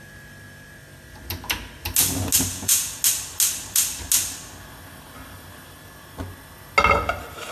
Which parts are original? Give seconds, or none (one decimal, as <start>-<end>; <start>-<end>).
0.0-2.5; 3.0-7.5